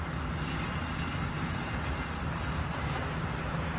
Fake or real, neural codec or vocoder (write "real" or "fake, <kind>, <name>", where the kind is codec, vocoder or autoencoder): real